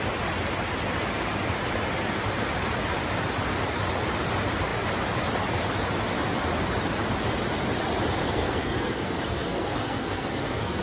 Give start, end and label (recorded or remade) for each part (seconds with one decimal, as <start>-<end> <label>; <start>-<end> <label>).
0.0-8.2 recorded; 8.2-10.8 remade